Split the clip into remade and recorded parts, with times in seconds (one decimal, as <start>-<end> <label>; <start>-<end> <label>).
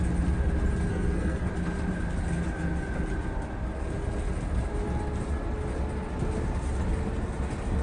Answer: 0.0-0.9 recorded; 0.9-1.5 remade; 1.5-7.8 recorded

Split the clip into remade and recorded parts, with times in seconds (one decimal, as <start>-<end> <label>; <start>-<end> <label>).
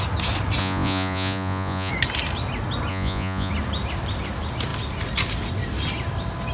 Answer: 0.0-0.6 recorded; 0.6-1.9 remade; 1.9-2.9 recorded; 2.9-3.5 remade; 3.5-6.5 recorded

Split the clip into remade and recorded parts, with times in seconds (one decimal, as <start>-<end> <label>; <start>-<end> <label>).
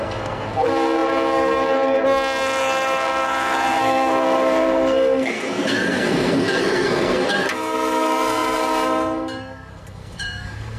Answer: 0.0-10.8 remade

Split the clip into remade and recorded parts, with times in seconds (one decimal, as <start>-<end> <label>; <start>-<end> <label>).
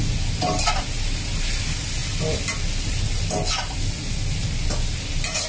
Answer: 0.0-5.5 recorded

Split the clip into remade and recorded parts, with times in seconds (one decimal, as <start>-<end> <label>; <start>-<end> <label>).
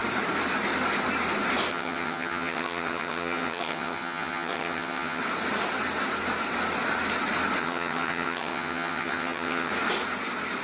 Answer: 0.0-1.7 recorded; 1.7-5.2 remade; 5.2-7.6 recorded; 7.6-9.7 remade; 9.7-10.6 recorded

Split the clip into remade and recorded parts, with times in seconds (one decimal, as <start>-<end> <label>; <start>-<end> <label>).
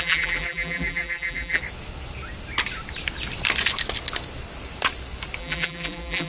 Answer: 0.0-1.6 remade; 1.6-5.4 recorded; 5.4-6.3 remade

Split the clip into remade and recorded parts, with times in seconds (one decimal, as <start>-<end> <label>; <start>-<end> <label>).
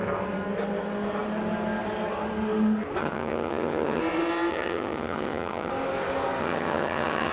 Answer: 0.0-3.0 recorded; 3.0-4.0 remade; 4.0-4.5 recorded; 4.5-5.7 remade; 5.7-6.4 recorded; 6.4-7.3 remade